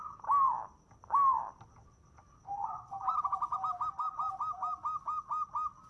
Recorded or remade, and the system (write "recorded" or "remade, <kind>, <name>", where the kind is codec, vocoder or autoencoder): recorded